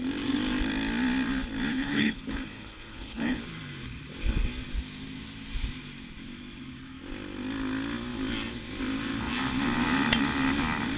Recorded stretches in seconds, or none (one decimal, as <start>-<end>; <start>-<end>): 0.0-1.7; 3.4-11.0